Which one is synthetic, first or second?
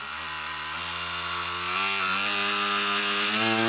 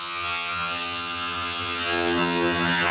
second